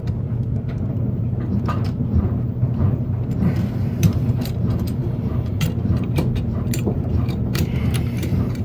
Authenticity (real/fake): fake